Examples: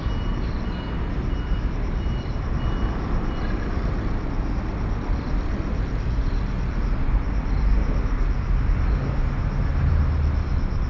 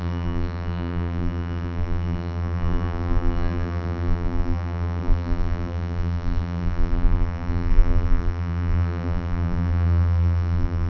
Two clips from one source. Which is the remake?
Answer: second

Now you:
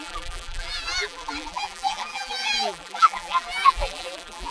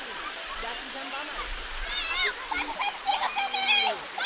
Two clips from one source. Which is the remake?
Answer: first